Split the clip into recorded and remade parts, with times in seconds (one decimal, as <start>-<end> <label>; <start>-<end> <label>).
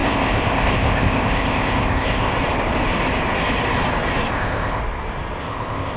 0.0-2.3 remade; 2.3-4.3 recorded; 4.3-4.8 remade; 4.8-5.4 recorded; 5.4-6.0 remade